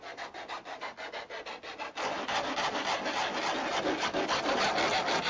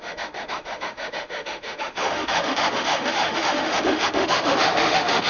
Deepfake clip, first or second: second